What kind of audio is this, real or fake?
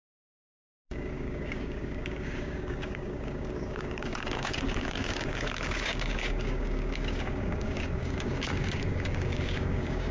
fake